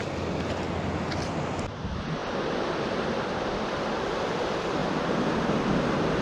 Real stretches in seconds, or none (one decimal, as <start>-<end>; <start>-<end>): 0.0-6.2